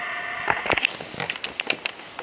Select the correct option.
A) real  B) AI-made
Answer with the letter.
A